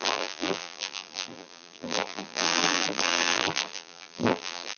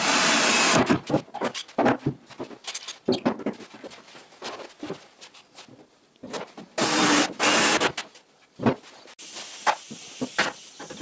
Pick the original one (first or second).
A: second